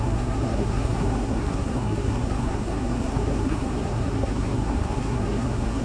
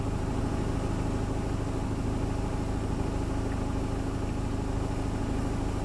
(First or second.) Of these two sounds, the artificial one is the first